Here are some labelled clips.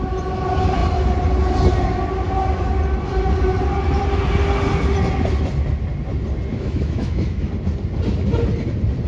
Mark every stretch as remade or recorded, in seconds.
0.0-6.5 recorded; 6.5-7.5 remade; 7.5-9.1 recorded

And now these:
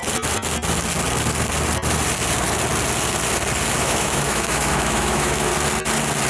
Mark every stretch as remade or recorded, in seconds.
0.0-3.8 recorded; 3.8-5.5 remade; 5.5-6.3 recorded

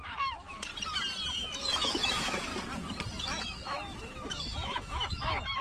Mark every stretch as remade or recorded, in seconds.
0.0-0.7 remade; 0.7-1.3 recorded; 1.3-2.5 remade; 2.5-3.2 recorded; 3.2-5.6 remade